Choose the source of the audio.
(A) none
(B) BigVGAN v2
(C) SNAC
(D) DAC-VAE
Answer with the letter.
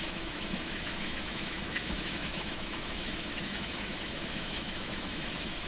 D